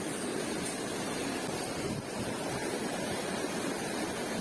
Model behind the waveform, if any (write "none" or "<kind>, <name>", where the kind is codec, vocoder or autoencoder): none